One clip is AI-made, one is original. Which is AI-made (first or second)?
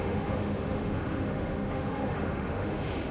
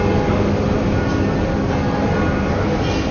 first